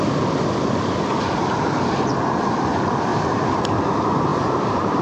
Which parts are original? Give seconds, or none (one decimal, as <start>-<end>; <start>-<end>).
0.0-1.1; 2.1-3.1; 3.6-4.3